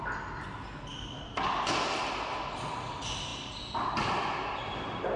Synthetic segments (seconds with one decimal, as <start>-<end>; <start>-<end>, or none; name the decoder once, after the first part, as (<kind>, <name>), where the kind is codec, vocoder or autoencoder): none